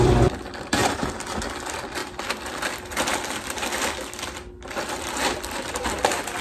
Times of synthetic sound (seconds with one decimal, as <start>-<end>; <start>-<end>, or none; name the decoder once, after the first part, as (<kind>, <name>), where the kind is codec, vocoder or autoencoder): 0.0-0.8 (vocoder, BigVGAN v2); 1.5-2.0; 2.5-3.1; 4.7-6.4